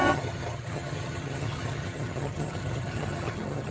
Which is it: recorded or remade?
remade